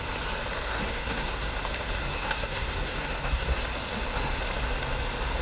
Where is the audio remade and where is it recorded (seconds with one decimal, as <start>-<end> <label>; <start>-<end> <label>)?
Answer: 0.0-0.7 recorded; 0.7-1.5 remade; 1.5-2.0 recorded; 2.0-3.6 remade; 3.6-5.4 recorded